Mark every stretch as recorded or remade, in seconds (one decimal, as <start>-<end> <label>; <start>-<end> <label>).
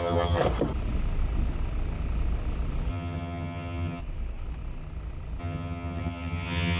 0.0-0.4 remade; 0.4-2.9 recorded; 2.9-4.0 remade; 4.0-5.4 recorded; 5.4-6.8 remade